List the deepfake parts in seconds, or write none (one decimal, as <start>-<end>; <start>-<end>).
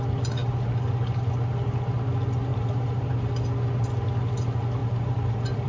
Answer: 2.5-3.3; 4.8-5.7